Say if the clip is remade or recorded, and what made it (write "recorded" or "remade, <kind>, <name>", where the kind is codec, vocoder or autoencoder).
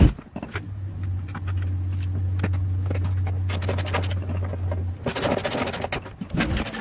recorded